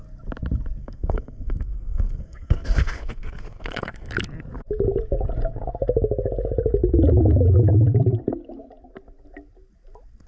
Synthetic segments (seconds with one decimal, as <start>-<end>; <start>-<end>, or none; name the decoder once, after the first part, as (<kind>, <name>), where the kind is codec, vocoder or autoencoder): 0.8-4.1 (codec, SNAC)

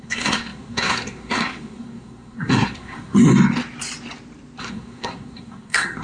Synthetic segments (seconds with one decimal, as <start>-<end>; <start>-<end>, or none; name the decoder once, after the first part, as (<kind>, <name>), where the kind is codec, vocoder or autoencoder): 0.0-3.3 (codec, SNAC); 4.6-6.0

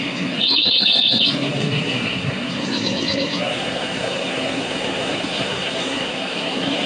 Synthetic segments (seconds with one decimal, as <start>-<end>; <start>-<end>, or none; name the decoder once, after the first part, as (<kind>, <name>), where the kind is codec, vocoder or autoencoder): 0.0-6.9 (codec, SNAC)

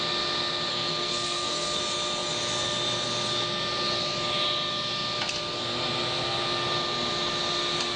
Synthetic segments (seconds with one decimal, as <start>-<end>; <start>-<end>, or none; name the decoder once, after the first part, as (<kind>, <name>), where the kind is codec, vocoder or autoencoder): 0.7-1.8 (codec, SNAC)

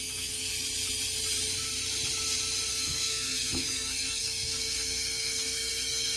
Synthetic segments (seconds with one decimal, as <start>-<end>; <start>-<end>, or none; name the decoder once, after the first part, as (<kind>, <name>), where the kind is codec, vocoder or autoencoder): 0.0-0.5 (codec, SNAC); 2.7-6.2